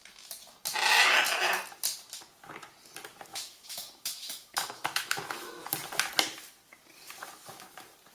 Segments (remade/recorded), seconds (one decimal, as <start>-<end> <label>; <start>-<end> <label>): 0.0-3.3 recorded; 3.3-5.7 remade; 5.7-8.1 recorded